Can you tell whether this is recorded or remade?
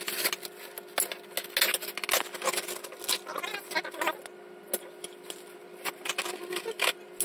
recorded